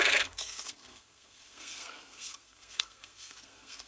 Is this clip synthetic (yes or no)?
yes